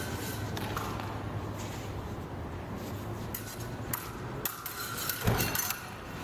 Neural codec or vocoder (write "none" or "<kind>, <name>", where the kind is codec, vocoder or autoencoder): none